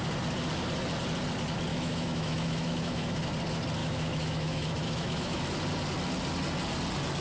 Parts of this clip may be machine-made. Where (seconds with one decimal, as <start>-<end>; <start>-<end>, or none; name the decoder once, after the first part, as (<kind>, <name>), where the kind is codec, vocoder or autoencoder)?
1.7-3.3 (autoencoder, DAC-VAE); 3.8-5.4